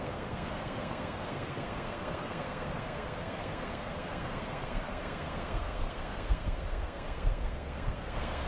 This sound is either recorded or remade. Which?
remade